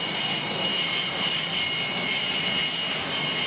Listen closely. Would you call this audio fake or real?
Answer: real